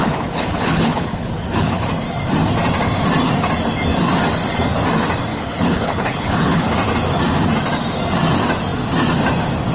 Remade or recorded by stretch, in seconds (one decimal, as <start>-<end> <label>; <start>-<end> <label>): 0.0-1.9 remade; 1.9-5.3 recorded; 5.3-6.7 remade; 6.7-9.7 recorded